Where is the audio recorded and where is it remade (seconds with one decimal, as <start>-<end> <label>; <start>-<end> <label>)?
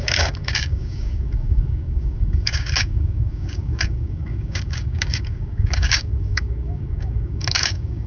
0.0-8.1 remade